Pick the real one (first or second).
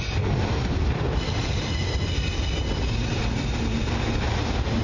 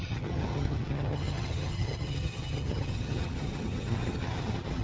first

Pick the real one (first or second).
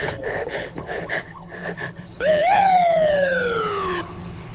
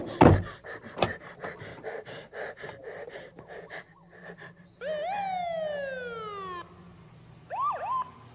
second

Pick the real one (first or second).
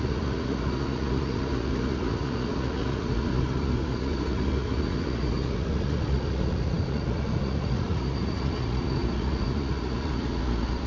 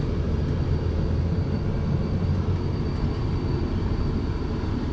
second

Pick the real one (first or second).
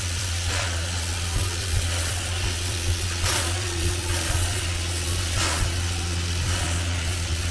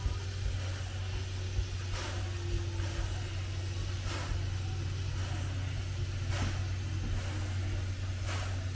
second